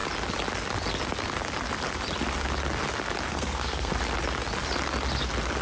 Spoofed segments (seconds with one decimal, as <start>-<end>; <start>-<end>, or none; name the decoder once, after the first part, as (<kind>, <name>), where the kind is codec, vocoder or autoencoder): 3.3-3.9 (codec, SNAC)